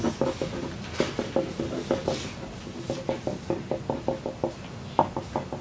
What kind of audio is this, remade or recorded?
recorded